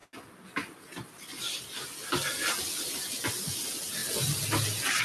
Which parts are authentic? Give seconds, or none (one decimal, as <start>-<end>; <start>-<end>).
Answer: 0.0-5.0